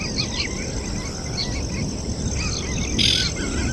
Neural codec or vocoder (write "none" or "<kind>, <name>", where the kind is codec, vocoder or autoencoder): none